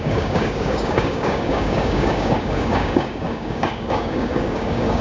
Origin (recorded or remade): remade